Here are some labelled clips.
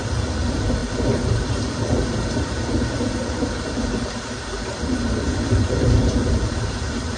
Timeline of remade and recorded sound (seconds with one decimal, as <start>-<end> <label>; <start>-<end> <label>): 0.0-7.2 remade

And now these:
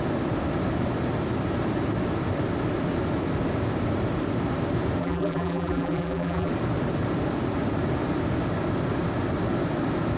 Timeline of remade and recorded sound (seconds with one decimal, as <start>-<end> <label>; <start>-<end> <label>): 0.0-5.0 recorded; 5.0-6.5 remade; 6.5-10.2 recorded

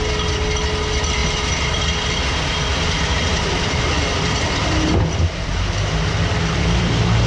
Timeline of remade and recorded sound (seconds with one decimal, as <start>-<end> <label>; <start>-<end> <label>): 0.0-1.2 recorded; 1.2-2.2 remade; 2.2-2.7 recorded; 2.7-7.3 remade